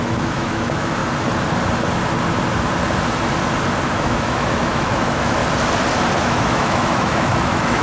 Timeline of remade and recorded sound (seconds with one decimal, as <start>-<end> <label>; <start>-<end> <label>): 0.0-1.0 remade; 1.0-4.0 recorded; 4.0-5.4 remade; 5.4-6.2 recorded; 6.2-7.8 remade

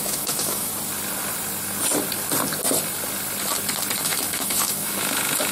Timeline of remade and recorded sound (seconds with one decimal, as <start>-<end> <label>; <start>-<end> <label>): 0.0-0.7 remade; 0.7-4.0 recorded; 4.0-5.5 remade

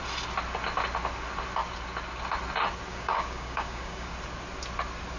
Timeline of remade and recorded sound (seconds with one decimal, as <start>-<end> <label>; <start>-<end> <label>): 0.0-2.9 recorded; 2.9-4.1 remade; 4.1-5.2 recorded

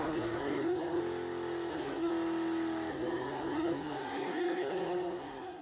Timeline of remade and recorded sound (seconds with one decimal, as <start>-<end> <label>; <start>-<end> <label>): 0.0-1.0 remade; 1.0-1.7 recorded; 1.7-2.1 remade; 2.1-2.9 recorded; 2.9-5.6 remade

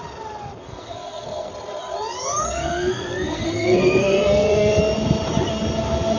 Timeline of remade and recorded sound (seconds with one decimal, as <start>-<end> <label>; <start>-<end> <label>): 0.0-0.6 recorded; 0.6-1.5 remade; 1.5-2.4 recorded; 2.4-4.8 remade; 4.8-6.2 recorded

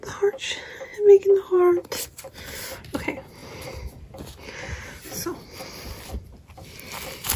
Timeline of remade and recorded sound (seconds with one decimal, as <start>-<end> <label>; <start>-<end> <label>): 0.0-0.9 recorded; 0.9-2.8 remade; 2.8-7.4 recorded